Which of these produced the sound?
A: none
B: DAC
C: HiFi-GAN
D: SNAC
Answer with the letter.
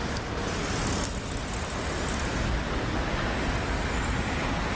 A